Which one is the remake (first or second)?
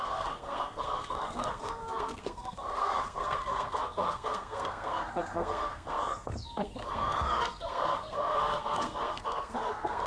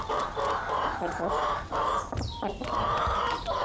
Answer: first